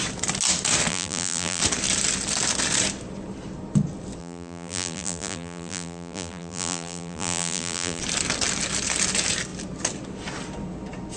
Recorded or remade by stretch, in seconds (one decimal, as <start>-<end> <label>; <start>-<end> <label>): 0.0-0.9 recorded; 0.9-1.6 remade; 1.6-4.2 recorded; 4.2-8.0 remade; 8.0-11.2 recorded